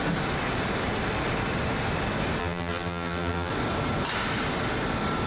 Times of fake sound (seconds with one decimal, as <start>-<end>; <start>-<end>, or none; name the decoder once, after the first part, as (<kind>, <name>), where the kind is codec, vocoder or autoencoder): 2.4-3.5 (vocoder, BigVGAN v2)